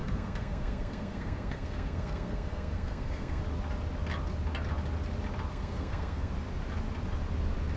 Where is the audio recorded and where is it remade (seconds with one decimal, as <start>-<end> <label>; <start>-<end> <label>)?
0.0-3.4 remade; 3.4-5.5 recorded; 5.5-6.3 remade; 6.3-7.8 recorded